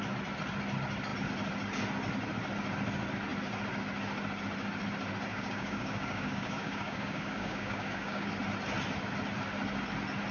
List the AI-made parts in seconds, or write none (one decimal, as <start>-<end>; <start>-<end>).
5.3-8.3